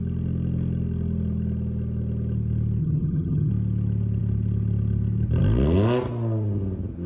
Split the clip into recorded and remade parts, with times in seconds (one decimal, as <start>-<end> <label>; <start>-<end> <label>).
0.0-2.8 recorded; 2.8-3.5 remade; 3.5-7.1 recorded